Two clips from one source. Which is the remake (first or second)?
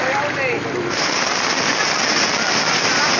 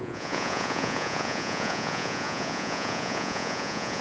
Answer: second